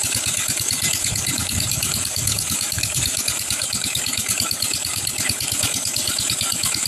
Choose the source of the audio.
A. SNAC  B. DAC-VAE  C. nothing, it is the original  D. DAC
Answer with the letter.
D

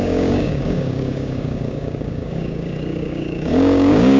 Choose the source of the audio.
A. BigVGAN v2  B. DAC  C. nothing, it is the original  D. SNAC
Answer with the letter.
B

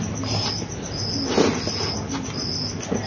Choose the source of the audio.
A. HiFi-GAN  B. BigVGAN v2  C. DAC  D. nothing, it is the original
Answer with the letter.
D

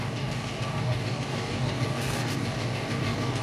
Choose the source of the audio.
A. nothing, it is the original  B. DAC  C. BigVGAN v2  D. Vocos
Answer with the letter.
B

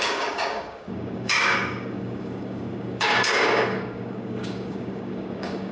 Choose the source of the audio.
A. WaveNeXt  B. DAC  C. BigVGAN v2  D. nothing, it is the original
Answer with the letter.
B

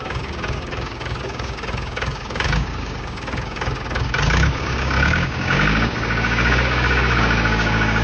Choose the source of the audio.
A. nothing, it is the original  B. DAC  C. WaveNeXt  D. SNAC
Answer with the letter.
B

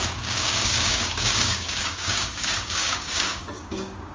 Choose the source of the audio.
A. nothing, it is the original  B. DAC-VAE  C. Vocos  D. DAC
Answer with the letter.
D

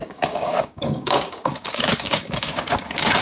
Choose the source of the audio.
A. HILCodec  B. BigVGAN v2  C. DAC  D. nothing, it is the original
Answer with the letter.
C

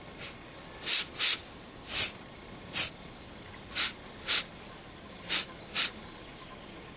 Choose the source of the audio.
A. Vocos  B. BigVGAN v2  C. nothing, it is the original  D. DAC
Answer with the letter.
C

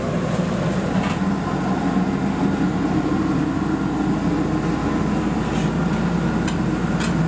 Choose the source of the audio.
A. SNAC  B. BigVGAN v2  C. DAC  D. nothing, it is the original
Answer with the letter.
D